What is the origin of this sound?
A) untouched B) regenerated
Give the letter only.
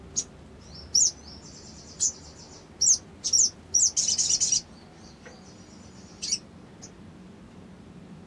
A